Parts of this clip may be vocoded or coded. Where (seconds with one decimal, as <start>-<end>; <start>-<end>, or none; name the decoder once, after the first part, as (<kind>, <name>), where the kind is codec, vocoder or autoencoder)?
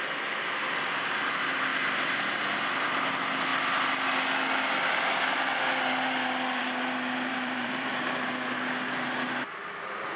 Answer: 7.3-7.9 (vocoder, BigVGAN v2)